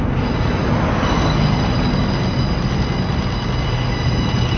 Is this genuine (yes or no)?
yes